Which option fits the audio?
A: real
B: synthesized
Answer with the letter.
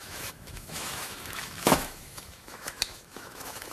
B